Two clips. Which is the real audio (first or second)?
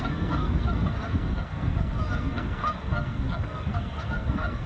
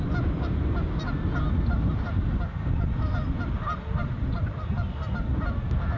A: second